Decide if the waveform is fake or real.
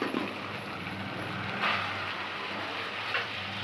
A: real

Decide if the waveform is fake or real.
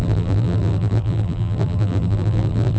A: fake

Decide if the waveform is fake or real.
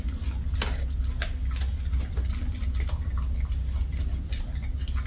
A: real